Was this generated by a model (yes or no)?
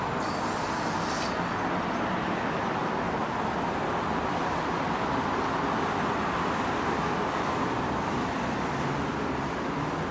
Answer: no